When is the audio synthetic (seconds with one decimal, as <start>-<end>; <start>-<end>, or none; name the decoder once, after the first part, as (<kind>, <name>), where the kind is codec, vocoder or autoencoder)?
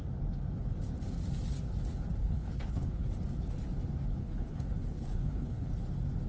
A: 2.2-3.1 (codec, HILCodec); 4.2-5.7